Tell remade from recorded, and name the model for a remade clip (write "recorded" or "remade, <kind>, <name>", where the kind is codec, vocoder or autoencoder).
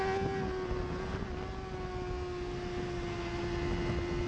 recorded